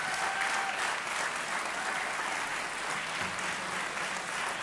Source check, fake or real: real